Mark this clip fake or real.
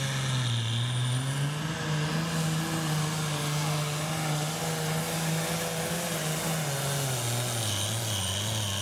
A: real